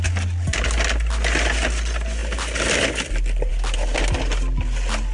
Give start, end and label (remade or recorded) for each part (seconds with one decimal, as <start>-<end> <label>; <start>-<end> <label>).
0.0-5.1 recorded